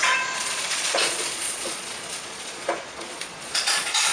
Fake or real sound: fake